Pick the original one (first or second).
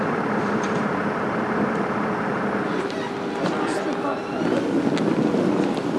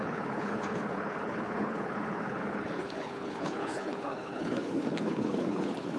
first